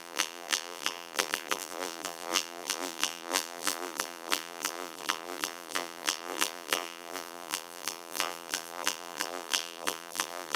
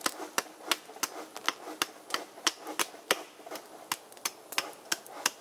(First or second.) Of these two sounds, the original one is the second